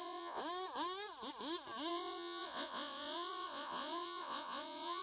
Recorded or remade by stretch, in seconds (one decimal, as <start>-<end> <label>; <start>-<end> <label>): 0.0-0.4 remade; 0.4-1.9 recorded; 1.9-5.0 remade